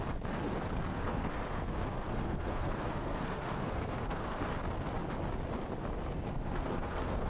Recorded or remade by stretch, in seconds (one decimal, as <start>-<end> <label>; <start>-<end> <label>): 0.0-0.9 recorded; 0.9-4.4 remade; 4.4-6.3 recorded; 6.3-7.3 remade